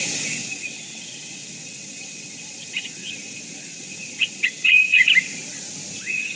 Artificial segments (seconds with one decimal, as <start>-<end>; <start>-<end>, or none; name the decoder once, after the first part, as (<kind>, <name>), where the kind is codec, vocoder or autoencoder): 0.0-5.0 (vocoder, WaveNeXt); 6.0-6.4